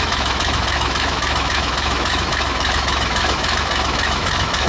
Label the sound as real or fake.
fake